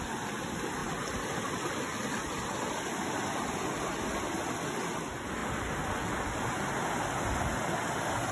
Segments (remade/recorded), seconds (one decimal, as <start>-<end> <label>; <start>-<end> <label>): 0.0-8.3 recorded